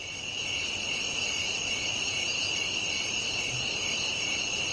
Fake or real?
real